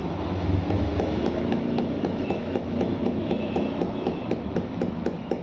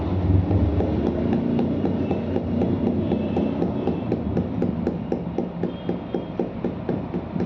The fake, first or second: first